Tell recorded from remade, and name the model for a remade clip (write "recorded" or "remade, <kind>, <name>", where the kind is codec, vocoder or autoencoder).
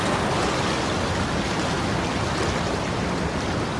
recorded